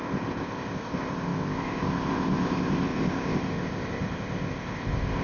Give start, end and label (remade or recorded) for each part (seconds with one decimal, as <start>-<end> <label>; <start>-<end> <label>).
0.0-5.2 remade